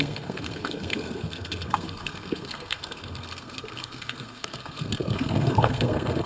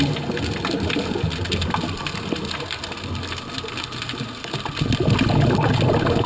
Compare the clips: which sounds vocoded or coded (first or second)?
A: first